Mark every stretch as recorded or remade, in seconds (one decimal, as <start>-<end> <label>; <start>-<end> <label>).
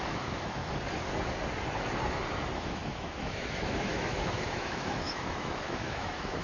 0.0-0.6 remade; 0.6-2.6 recorded; 2.6-6.4 remade